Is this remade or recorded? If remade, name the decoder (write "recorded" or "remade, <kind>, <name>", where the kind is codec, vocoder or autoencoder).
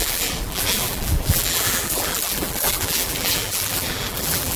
remade, vocoder, BigVGAN v2